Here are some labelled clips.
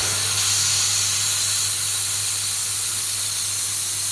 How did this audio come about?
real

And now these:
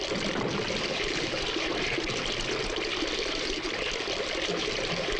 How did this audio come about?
real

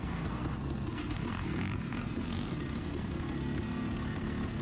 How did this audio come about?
fake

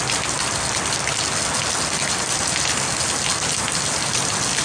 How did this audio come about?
real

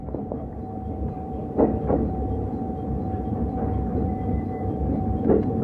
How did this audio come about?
fake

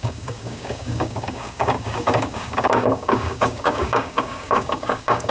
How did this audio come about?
fake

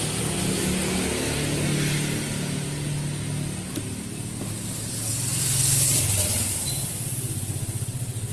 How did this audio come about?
real